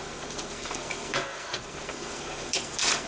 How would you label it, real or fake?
fake